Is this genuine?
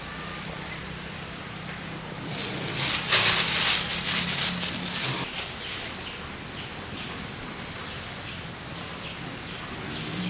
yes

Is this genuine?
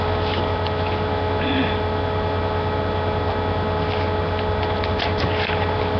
yes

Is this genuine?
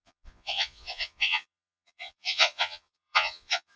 no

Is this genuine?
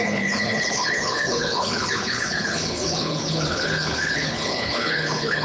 no